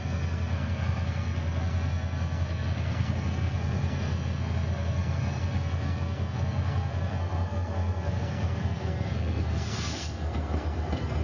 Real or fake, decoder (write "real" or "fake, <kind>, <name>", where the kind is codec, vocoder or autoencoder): fake, codec, SNAC